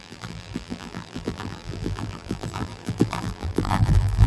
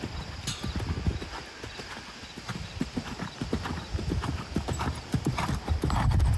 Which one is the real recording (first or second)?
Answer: second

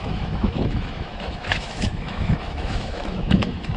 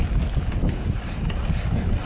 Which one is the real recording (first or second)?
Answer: second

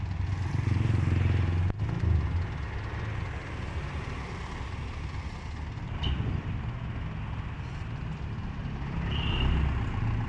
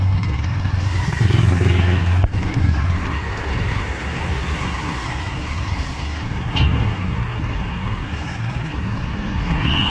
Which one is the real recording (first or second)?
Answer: first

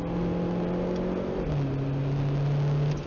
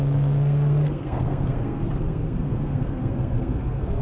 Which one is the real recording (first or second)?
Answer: first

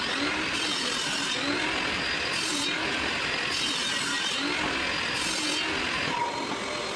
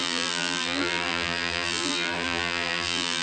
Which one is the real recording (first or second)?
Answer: first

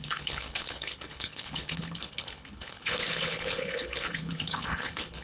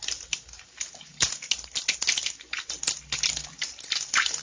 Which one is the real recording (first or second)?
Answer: second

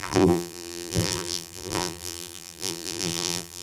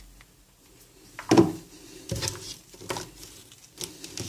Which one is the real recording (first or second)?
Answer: second